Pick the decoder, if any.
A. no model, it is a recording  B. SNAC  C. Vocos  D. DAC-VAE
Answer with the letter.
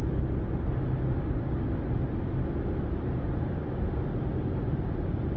A